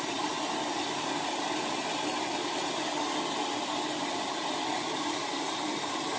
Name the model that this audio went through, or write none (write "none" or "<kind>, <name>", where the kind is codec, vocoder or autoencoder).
none